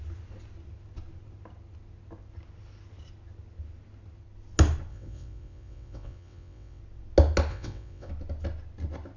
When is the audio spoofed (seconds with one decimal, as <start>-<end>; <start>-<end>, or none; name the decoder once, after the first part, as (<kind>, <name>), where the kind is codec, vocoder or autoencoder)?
4.9-6.8 (vocoder, WaveNeXt); 7.5-8.1